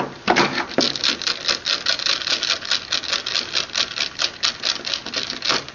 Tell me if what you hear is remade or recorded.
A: recorded